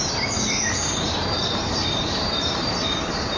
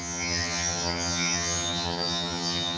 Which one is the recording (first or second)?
first